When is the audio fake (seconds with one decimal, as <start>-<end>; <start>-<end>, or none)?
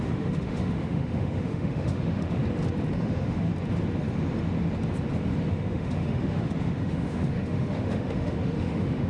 0.0-2.4; 2.9-3.5; 5.5-9.1